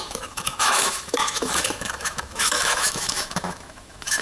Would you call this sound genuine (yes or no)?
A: no